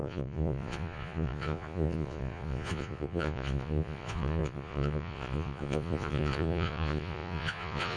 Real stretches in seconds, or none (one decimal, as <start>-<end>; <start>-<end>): none